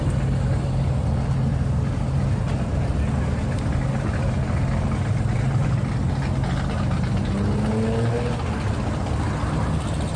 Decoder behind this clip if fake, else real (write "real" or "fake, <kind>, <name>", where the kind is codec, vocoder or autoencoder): real